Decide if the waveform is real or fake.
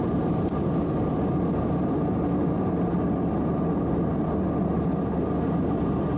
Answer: real